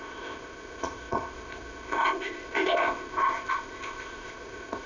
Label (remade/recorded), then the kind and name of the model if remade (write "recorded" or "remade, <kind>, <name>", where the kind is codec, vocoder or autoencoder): remade, codec, ZipCodec